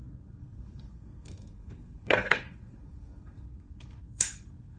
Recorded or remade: remade